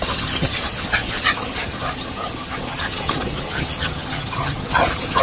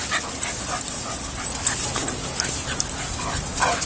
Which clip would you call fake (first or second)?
first